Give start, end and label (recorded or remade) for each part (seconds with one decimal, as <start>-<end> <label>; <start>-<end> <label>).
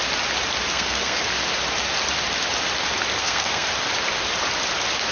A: 0.0-0.7 recorded; 0.7-1.2 remade; 1.2-3.2 recorded; 3.2-3.7 remade; 3.7-5.1 recorded